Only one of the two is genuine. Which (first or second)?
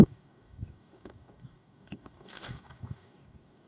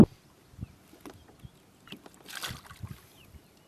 second